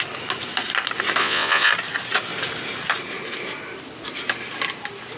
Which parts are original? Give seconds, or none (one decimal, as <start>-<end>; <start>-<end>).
0.0-1.2; 1.7-5.2